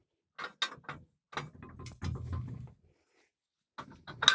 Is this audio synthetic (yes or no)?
no